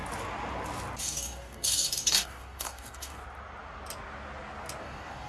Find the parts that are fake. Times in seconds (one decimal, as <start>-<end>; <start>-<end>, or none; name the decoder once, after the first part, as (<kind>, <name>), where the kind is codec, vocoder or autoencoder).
1.0-3.2 (codec, DAC); 4.8-5.3